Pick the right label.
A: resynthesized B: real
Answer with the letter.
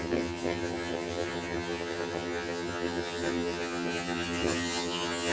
A